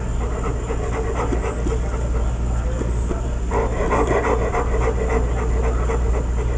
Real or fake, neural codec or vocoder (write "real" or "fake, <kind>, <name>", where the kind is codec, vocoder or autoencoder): real